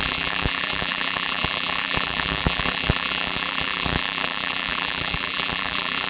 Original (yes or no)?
no